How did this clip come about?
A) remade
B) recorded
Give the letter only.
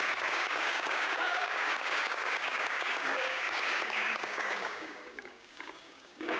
A